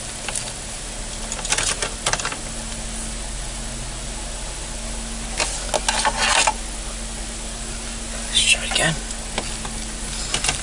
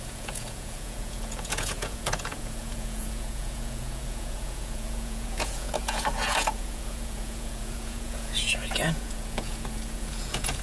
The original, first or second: first